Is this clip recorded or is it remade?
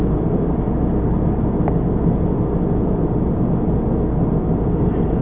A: recorded